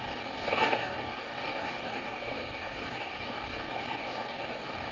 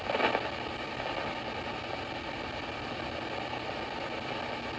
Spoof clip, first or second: first